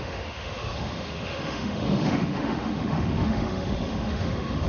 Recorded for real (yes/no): no